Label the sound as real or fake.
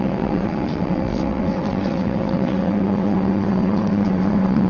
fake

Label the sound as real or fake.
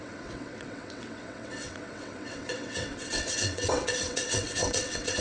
fake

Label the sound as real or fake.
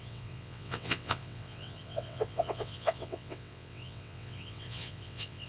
fake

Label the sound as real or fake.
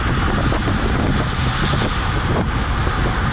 real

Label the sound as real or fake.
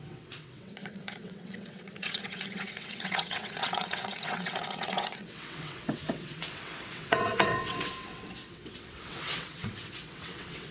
fake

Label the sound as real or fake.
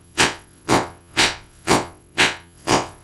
fake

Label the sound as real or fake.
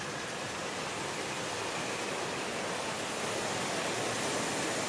real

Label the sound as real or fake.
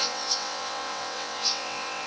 fake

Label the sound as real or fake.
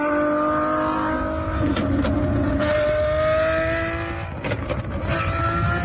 real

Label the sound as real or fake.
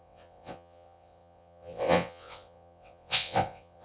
fake